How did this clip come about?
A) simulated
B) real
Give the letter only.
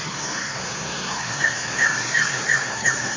A